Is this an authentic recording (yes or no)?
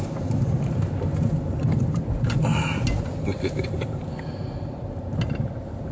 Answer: yes